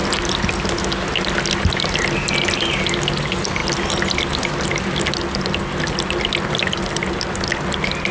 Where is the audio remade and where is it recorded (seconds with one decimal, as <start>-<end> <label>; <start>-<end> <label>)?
0.0-8.1 recorded